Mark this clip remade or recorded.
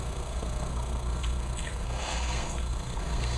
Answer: remade